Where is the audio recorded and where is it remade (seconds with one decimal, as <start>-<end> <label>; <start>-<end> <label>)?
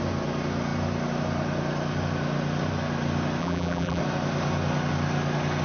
0.0-3.4 recorded; 3.4-4.0 remade; 4.0-5.6 recorded